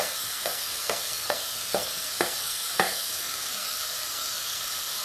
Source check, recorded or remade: remade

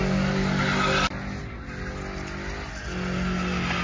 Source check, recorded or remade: recorded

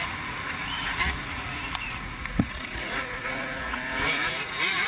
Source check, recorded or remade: remade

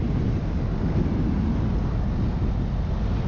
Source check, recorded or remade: recorded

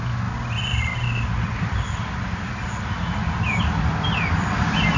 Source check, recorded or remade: recorded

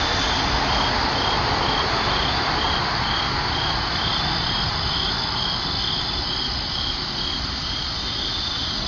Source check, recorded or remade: recorded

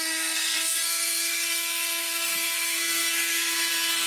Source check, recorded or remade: remade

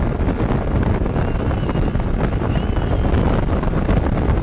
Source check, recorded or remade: recorded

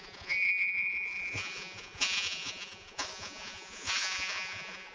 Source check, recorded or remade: remade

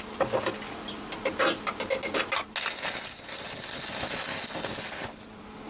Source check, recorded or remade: recorded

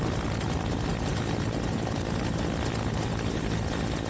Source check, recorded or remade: recorded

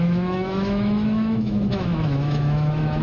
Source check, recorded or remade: remade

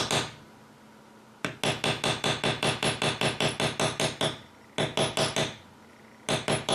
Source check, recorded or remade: recorded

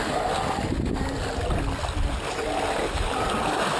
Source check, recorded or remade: recorded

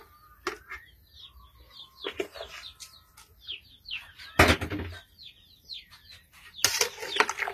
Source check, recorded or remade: recorded